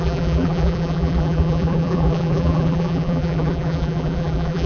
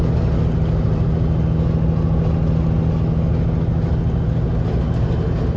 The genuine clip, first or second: second